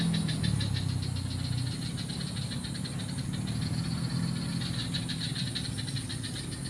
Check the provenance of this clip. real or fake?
real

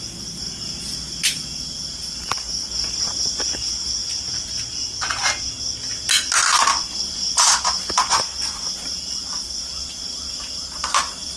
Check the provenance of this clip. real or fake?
real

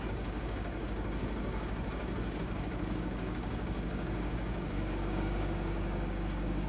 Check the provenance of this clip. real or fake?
fake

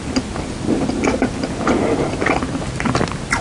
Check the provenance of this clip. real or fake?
real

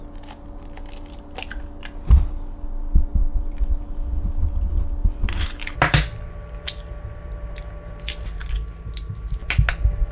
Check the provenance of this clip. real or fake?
real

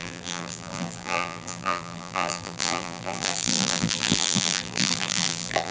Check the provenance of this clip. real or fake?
fake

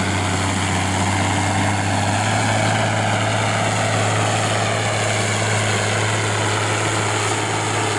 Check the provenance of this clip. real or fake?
real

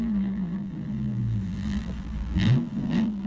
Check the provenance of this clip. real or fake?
fake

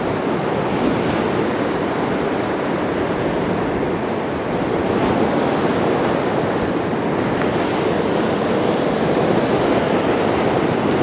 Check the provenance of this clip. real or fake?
real